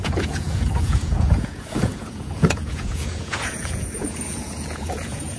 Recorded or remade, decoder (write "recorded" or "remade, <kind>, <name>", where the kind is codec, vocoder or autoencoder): remade, vocoder, Vocos